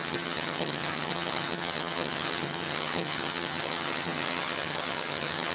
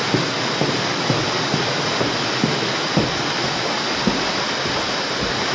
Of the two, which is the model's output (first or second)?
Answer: first